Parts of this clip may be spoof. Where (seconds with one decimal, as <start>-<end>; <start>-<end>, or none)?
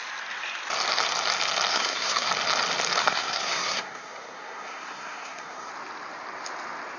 1.7-2.3; 3.0-5.7